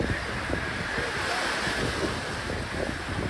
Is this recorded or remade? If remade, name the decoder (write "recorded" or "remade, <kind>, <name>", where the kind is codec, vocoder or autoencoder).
recorded